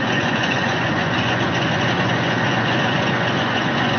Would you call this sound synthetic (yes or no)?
yes